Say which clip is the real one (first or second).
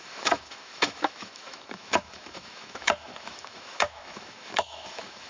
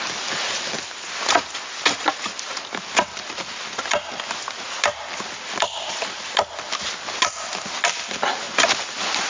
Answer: second